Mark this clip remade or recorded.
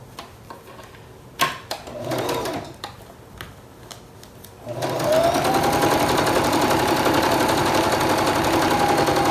recorded